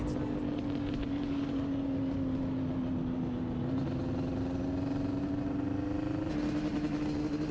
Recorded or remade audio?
recorded